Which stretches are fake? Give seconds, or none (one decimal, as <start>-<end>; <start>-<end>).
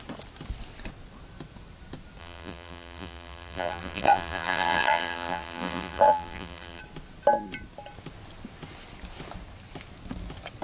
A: 2.2-6.8